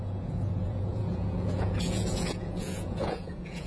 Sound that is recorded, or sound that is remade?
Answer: remade